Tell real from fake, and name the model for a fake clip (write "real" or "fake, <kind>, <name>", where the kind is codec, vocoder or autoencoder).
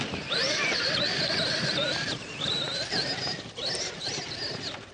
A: real